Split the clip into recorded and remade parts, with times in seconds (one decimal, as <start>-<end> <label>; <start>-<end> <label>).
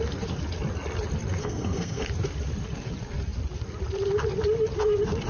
0.0-1.4 recorded; 1.4-2.1 remade; 2.1-5.3 recorded